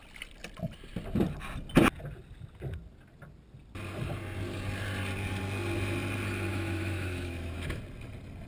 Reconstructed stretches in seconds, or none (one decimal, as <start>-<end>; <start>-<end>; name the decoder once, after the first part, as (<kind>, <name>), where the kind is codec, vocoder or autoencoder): 6.5-7.8 (autoencoder, DAC-VAE)